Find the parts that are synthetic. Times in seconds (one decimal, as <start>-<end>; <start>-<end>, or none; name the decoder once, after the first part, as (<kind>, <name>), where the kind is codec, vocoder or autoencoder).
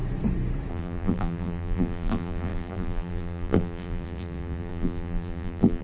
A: 0.7-5.8 (vocoder, BigVGAN v2)